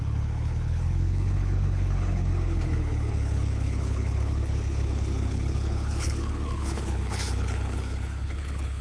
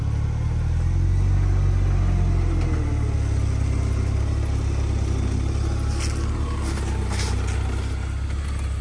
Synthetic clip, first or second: first